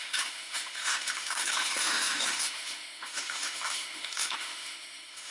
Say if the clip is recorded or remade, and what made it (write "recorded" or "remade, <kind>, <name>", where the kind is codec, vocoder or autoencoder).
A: remade, autoencoder, DAC-VAE